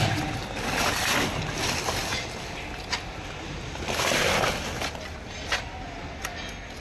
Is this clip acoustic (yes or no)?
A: yes